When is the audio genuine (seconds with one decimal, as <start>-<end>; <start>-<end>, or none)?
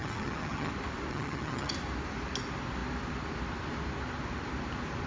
0.7-1.1; 1.7-5.1